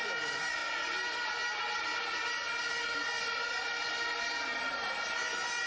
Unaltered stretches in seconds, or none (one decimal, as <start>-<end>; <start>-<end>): 0.0-5.7